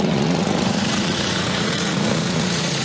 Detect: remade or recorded remade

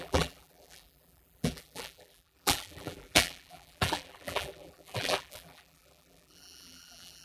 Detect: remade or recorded remade